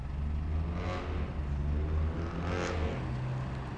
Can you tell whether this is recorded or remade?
recorded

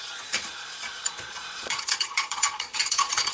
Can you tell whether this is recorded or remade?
remade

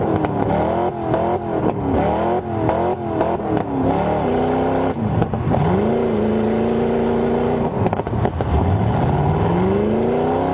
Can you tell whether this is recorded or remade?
recorded